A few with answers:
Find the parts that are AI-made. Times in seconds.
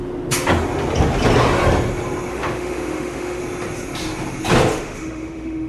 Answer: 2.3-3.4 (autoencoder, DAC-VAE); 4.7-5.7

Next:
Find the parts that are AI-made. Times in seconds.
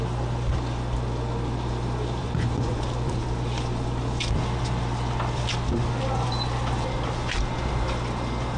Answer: 2.2-2.8 (vocoder, Vocos)